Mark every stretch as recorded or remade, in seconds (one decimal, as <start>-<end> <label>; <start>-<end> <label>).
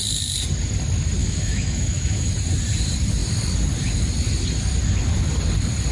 0.0-1.2 recorded; 1.2-2.3 remade; 2.3-5.9 recorded